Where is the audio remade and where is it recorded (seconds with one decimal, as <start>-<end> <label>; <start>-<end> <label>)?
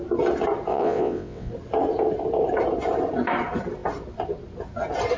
0.0-0.7 recorded; 0.7-1.5 remade; 1.5-5.2 recorded